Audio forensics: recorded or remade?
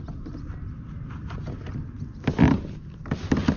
recorded